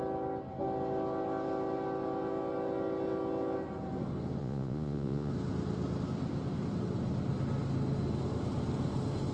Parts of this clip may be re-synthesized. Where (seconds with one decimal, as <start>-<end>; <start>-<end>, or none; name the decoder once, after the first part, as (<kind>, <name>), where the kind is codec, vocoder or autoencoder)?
4.4-5.3 (vocoder, Vocos)